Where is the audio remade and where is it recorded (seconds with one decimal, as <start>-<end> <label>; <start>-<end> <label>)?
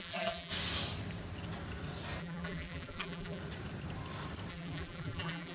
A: 0.0-0.5 remade; 0.5-2.2 recorded; 2.2-3.4 remade; 3.4-4.5 recorded; 4.5-5.5 remade